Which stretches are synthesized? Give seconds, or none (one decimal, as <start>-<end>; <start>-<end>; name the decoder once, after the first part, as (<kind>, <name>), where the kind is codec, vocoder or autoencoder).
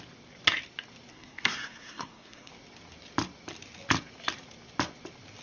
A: 1.1-2.5 (codec, SNAC)